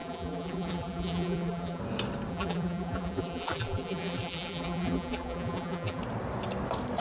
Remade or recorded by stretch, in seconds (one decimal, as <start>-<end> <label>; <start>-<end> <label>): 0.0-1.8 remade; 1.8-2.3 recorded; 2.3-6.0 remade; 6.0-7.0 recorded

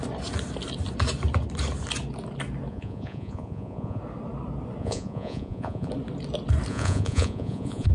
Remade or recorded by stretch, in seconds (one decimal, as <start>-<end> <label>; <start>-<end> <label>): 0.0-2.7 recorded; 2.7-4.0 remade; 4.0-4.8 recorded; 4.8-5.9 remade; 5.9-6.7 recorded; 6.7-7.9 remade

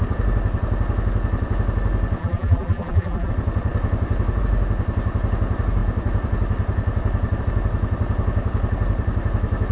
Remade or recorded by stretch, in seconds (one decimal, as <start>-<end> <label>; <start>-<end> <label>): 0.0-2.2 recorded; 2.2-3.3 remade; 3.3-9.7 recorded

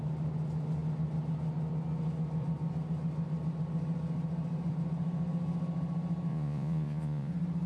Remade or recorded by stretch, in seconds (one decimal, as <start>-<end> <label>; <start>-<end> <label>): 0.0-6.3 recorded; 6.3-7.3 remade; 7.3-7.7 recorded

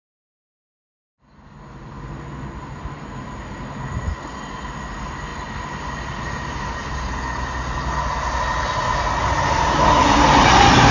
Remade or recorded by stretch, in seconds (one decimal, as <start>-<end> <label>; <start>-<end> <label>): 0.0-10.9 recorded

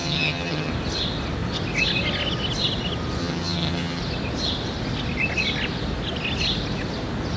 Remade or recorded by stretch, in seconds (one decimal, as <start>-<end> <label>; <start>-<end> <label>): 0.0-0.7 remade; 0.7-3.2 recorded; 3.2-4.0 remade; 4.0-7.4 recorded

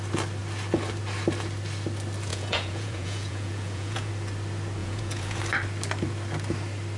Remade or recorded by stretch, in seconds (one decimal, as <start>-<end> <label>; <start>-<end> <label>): 0.0-2.3 recorded; 2.3-4.1 remade; 4.1-4.8 recorded; 4.8-5.4 remade; 5.4-7.0 recorded